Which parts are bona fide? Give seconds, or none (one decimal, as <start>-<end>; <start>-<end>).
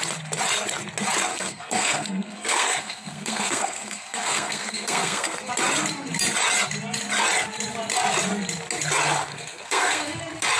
0.0-1.3; 5.5-9.3; 10.2-10.6